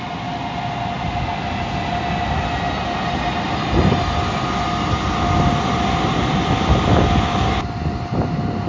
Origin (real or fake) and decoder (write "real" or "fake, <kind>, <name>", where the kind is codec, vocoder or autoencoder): real